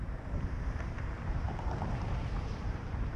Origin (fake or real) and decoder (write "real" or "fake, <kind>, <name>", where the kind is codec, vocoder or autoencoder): fake, vocoder, BigVGAN v2